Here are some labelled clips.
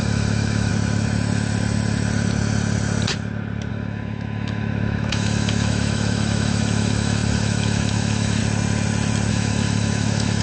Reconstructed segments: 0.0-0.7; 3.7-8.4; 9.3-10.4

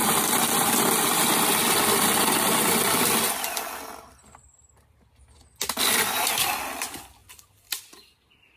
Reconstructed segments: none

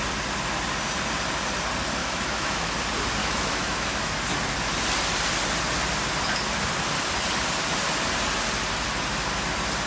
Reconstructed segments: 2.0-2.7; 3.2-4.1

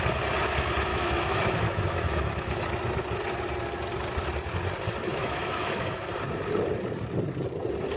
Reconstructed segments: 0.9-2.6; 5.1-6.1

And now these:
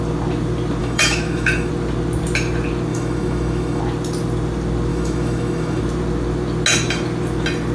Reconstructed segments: 0.8-1.7; 2.9-3.8; 4.9-5.8

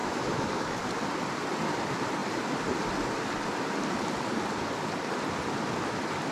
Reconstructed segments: 0.0-0.8